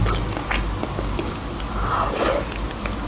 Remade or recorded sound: recorded